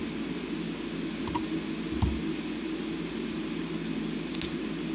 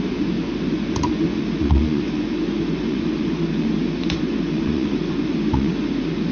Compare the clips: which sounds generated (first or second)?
second